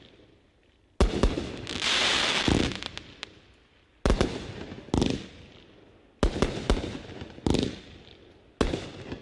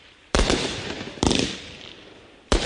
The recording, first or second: first